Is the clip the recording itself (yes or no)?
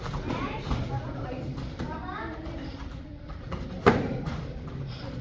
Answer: no